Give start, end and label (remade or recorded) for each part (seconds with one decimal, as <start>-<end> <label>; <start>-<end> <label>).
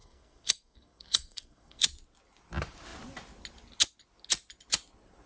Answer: 0.0-1.8 remade; 1.8-5.3 recorded